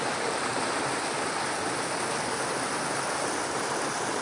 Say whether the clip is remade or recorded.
recorded